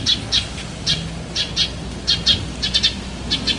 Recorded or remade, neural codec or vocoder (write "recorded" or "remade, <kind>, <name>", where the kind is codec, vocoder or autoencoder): recorded